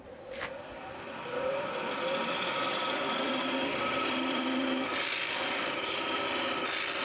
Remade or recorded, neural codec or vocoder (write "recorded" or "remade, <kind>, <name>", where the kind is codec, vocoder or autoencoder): remade, vocoder, BigVGAN v2